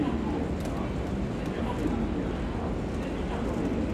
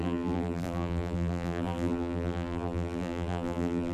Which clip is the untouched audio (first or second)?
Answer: first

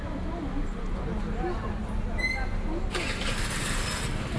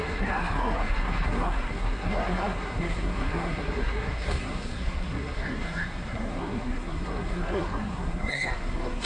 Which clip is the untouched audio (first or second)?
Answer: first